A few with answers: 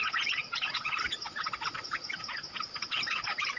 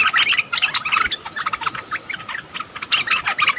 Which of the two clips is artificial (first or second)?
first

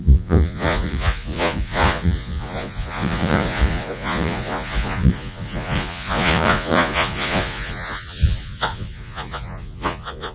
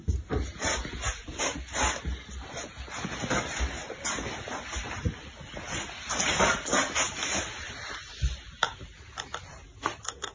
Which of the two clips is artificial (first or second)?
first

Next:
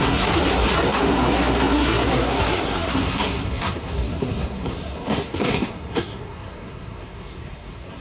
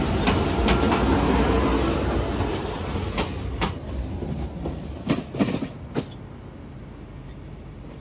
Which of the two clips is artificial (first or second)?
first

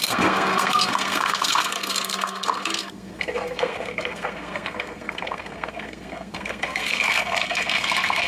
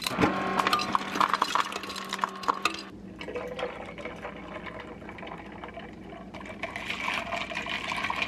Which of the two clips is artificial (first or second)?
first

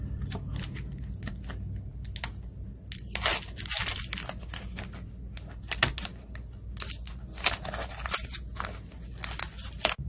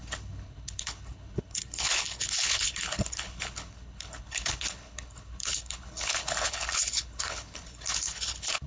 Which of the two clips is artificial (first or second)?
second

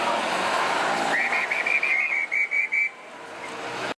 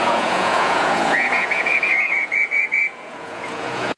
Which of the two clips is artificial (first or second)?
second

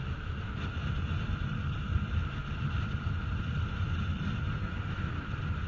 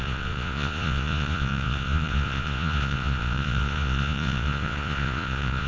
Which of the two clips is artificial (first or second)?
second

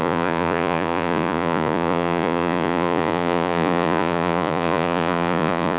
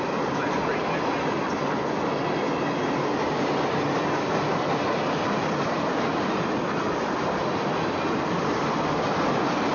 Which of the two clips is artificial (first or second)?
first